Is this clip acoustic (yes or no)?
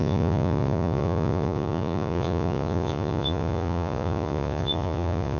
no